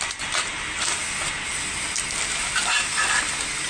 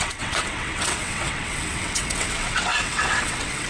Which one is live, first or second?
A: first